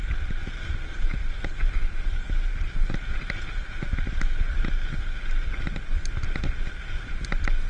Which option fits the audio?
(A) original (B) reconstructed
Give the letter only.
A